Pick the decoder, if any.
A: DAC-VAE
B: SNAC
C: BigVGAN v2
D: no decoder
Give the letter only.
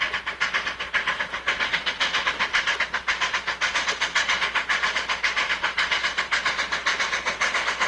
D